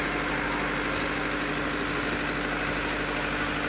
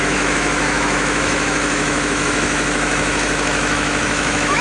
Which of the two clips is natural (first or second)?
first